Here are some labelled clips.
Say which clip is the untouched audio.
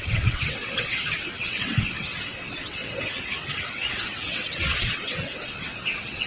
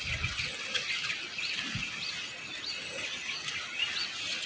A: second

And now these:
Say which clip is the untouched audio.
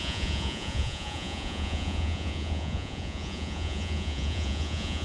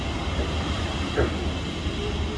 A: second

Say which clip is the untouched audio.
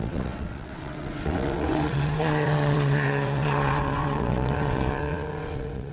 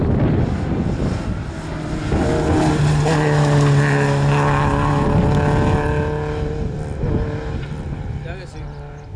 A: second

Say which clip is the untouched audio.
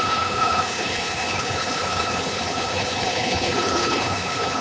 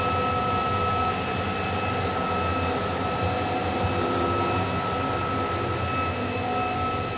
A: second